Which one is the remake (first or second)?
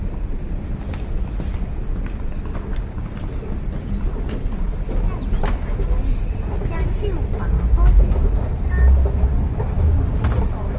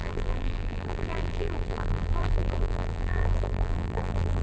second